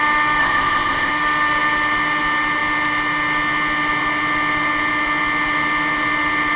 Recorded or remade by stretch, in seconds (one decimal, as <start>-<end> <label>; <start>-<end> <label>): 0.0-0.4 recorded; 0.4-1.1 remade; 1.1-6.6 recorded